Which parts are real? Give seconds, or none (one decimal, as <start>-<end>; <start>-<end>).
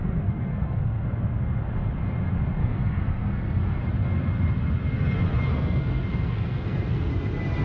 1.1-2.6; 3.8-5.5; 7.1-7.6